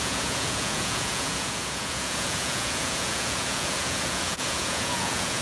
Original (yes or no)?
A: no